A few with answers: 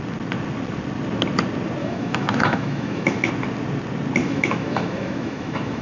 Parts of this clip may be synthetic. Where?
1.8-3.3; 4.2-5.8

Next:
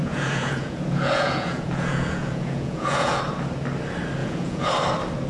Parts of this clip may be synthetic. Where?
0.0-3.2; 4.2-4.7

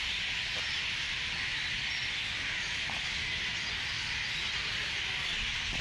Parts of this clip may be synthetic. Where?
none

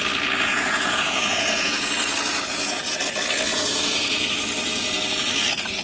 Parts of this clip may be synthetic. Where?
0.5-1.9; 2.3-3.0; 3.5-4.3

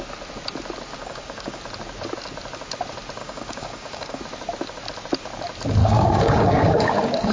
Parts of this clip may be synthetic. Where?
1.0-1.6; 3.2-4.2; 5.8-7.3